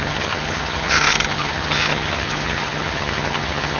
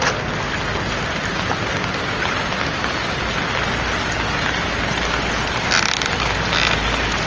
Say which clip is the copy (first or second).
first